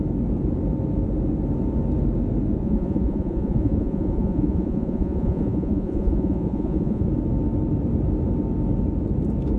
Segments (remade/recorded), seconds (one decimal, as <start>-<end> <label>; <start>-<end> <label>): 0.0-2.6 recorded; 2.6-7.1 remade; 7.1-9.6 recorded